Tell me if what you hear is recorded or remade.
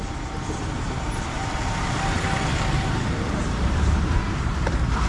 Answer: remade